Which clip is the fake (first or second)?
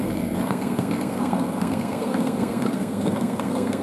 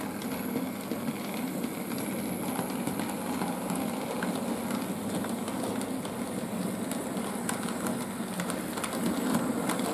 first